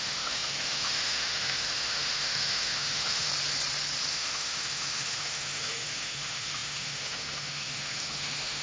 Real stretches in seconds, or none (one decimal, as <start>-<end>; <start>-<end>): 3.3-4.1